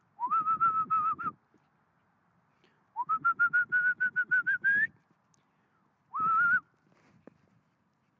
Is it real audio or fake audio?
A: real